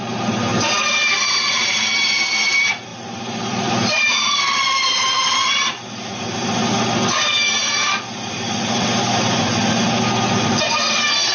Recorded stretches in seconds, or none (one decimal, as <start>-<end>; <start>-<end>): 0.0-0.5; 1.3-2.9; 6.2-7.6; 9.6-11.3